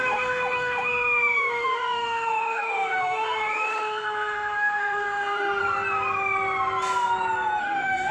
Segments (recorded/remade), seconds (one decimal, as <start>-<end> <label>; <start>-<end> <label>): 0.0-5.6 remade; 5.6-7.6 recorded; 7.6-8.1 remade